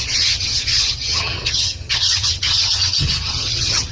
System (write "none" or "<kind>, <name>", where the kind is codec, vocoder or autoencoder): vocoder, HiFi-GAN